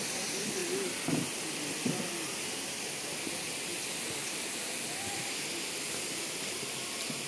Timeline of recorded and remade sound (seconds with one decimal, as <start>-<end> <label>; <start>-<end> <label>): 0.0-7.3 recorded

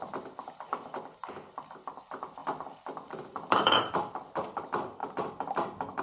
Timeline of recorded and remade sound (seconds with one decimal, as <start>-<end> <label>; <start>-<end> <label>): 0.0-2.0 remade; 2.0-2.4 recorded; 2.4-3.9 remade; 3.9-6.0 recorded

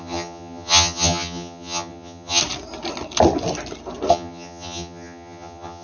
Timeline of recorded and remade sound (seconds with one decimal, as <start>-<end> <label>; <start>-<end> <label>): 0.0-2.4 remade; 2.4-4.1 recorded; 4.1-5.8 remade

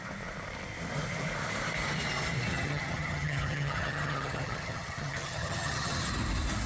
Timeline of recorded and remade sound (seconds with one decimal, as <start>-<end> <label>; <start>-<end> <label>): 0.0-2.5 recorded; 2.5-6.1 remade; 6.1-6.7 recorded

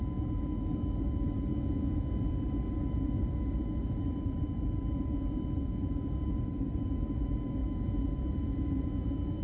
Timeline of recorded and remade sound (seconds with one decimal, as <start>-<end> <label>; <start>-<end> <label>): 0.0-1.5 remade; 1.5-2.3 recorded; 2.3-9.4 remade